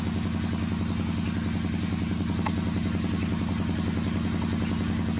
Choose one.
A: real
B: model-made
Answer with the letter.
A